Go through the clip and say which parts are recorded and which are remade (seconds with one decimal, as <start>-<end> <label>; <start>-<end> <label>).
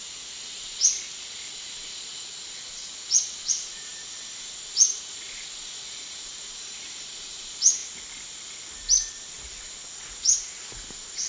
0.0-2.1 remade; 2.1-2.7 recorded; 2.7-7.8 remade; 7.8-9.1 recorded; 9.1-11.3 remade